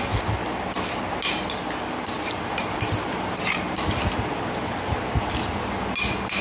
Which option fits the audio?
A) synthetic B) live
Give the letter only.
B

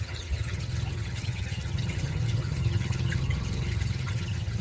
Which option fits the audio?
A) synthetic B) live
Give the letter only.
A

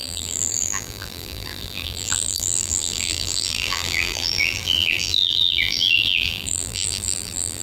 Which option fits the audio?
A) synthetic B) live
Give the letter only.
A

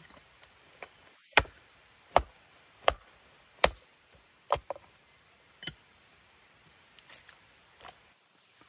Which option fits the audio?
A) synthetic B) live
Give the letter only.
A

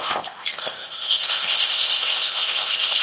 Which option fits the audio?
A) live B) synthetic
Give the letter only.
B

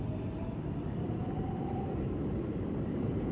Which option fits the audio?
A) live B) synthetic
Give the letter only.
B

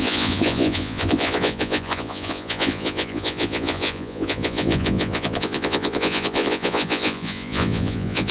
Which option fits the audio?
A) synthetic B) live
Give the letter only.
A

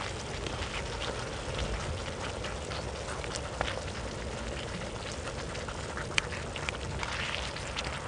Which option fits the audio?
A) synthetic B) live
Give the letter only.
B